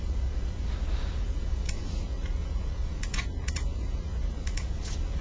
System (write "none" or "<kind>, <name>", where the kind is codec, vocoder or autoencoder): vocoder, Vocos